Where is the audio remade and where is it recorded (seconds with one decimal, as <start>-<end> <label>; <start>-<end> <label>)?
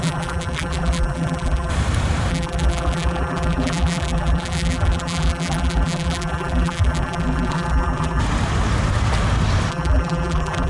0.0-1.7 remade; 1.7-2.3 recorded; 2.3-8.2 remade; 8.2-9.7 recorded; 9.7-10.7 remade